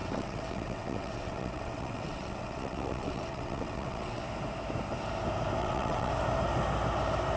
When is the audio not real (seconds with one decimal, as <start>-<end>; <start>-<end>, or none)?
0.0-4.2; 5.6-6.1